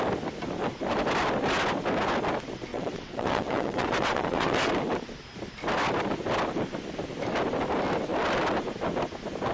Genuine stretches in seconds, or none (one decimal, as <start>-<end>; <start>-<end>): 0.0-2.7; 4.7-9.5

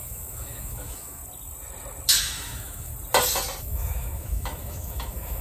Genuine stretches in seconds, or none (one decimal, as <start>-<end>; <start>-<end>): 1.2-2.2; 2.9-3.6

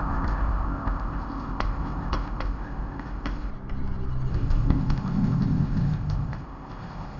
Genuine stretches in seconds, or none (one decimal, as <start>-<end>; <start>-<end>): 3.5-4.3

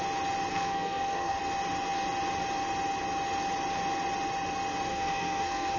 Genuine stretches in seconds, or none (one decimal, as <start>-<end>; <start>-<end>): 0.0-0.5; 1.4-4.9

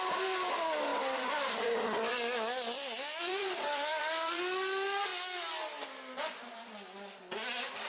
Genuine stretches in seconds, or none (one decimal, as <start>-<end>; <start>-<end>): 0.0-0.9; 4.4-7.9

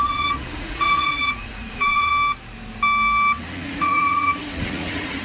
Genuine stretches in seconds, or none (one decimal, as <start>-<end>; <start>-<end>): 2.1-3.4

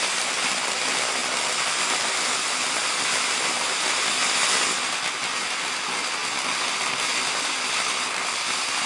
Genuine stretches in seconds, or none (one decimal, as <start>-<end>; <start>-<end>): 0.0-8.9